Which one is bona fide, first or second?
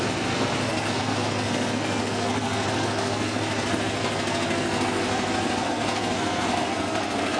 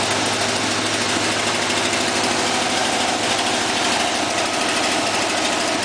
second